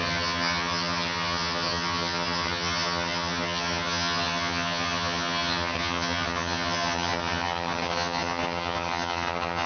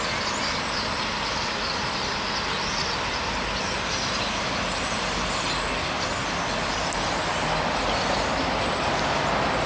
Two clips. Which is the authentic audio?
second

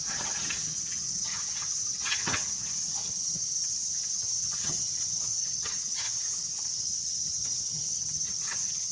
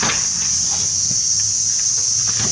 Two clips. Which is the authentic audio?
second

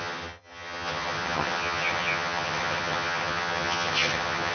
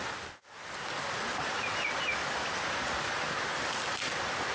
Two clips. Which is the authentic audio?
second